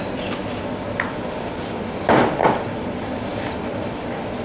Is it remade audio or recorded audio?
remade